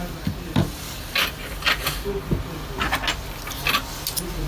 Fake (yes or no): no